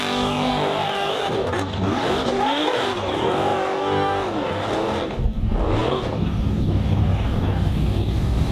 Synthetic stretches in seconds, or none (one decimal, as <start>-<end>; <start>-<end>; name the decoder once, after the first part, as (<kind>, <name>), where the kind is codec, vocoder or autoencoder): 0.0-8.5 (codec, DAC)